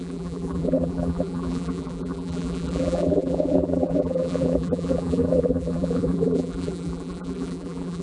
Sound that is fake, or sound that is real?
fake